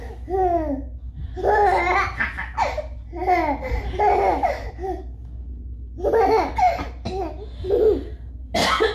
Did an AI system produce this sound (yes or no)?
no